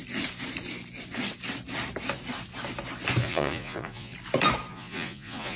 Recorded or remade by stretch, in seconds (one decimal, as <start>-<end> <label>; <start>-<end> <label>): 0.0-3.2 recorded; 3.2-4.1 remade; 4.1-4.7 recorded; 4.7-5.6 remade